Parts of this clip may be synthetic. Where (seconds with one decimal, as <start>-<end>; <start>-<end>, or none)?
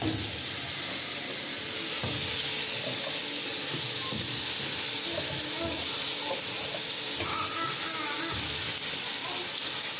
none